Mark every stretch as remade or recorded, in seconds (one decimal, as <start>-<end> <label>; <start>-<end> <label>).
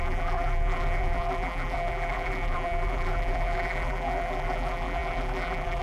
0.0-5.8 remade